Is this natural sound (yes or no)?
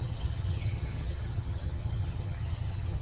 no